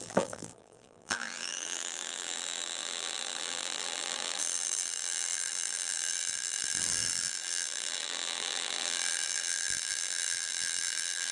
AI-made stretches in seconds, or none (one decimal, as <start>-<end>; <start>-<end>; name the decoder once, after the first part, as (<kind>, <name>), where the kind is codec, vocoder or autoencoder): 0.0-11.3 (vocoder, BigVGAN v2)